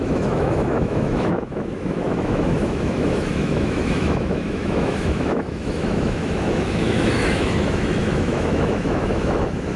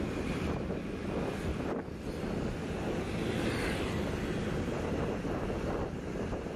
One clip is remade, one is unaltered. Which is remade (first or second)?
first